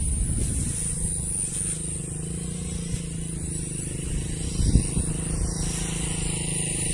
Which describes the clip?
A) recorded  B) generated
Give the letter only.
A